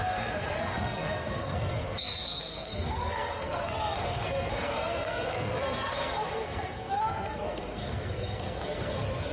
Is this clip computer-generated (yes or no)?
yes